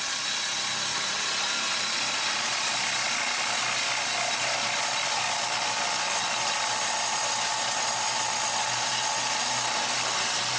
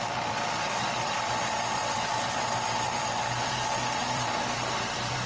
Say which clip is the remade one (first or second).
second